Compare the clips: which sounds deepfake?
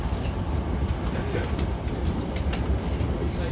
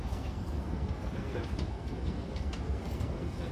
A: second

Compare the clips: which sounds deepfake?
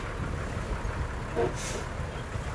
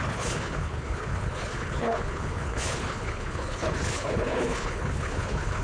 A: second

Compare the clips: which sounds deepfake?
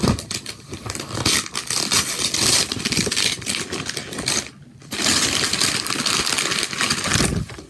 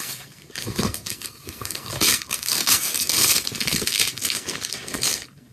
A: second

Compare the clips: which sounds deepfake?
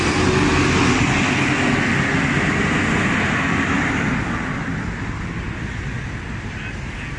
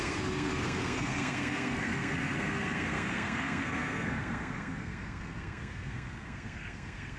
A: second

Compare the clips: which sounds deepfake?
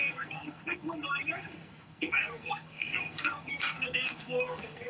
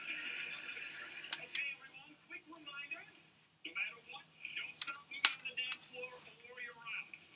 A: first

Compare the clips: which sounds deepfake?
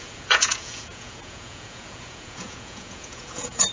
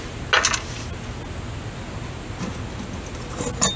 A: first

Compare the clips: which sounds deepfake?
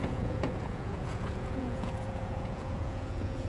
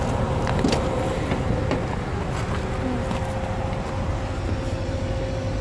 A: first